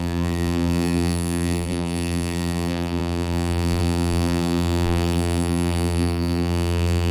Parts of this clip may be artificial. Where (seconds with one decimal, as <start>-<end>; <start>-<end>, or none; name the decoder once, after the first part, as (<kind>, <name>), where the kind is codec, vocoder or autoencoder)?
0.0-7.1 (vocoder, BigVGAN v2)